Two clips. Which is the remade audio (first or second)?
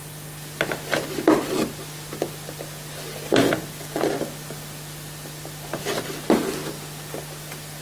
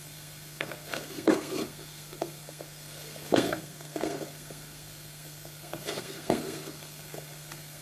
second